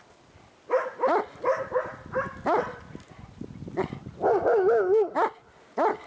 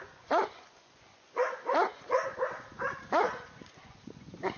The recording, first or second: first